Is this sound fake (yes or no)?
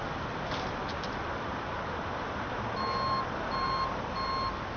no